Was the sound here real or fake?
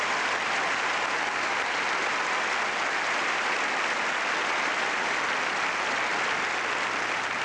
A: real